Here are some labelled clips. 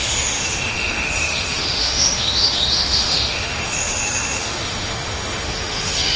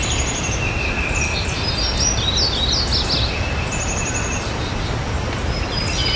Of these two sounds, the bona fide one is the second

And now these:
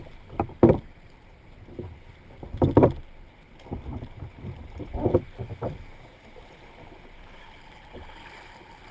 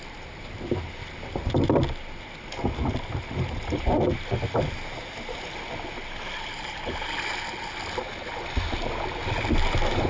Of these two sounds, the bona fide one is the second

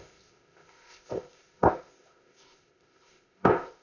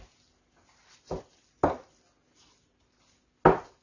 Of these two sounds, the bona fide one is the second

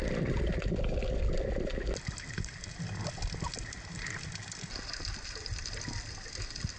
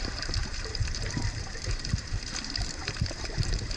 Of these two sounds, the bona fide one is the first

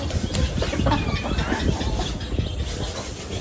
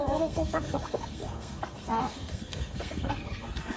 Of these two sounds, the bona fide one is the first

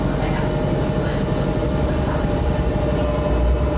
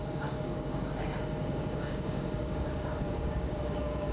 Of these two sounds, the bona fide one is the first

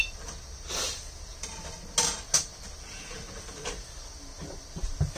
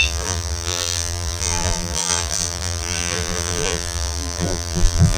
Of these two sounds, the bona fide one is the first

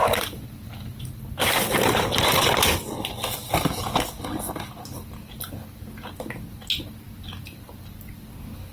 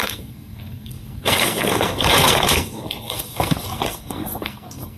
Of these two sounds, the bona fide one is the first